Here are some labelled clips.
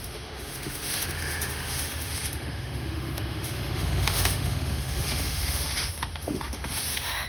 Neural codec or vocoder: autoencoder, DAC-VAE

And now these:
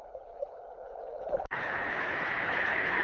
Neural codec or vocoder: codec, HILCodec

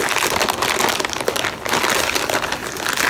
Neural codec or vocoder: none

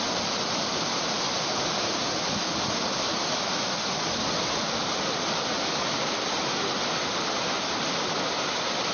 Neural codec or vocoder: none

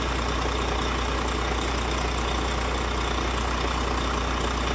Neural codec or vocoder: none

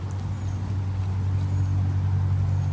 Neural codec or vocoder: none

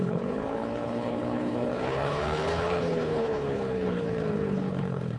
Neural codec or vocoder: codec, HILCodec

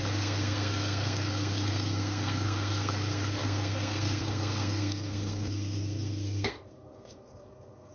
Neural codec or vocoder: codec, SNAC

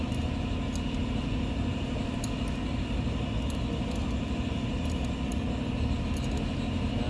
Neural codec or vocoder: none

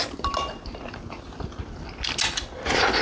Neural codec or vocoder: none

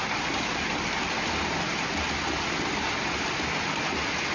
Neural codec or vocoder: none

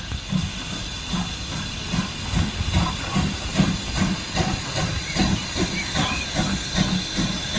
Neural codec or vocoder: none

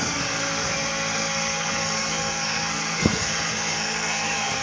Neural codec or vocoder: codec, SNAC